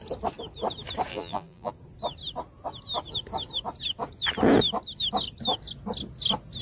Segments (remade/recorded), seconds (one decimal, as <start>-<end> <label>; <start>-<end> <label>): 0.0-1.1 recorded; 1.1-1.7 remade; 1.7-6.6 recorded